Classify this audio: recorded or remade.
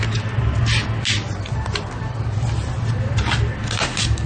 recorded